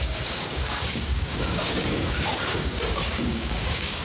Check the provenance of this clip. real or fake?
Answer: fake